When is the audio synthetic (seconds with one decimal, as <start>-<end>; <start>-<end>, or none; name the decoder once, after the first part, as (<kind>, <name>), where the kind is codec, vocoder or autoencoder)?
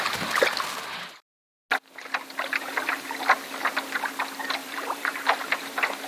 4.6-5.4 (vocoder, BigVGAN v2)